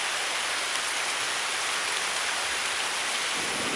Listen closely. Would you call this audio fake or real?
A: fake